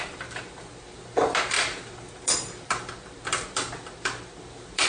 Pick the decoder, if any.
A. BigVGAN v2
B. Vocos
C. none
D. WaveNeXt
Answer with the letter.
A